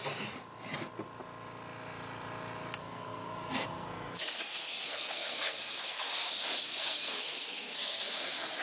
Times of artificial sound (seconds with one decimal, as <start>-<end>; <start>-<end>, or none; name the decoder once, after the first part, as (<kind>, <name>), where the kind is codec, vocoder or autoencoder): 2.8-6.3 (codec, SNAC); 6.7-8.6